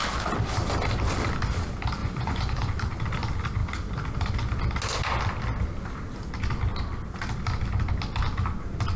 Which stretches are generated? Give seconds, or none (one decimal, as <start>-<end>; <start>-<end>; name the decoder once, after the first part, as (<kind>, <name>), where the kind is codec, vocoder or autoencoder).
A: 2.0-2.7 (vocoder, Vocos)